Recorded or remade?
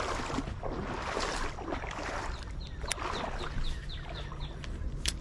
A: recorded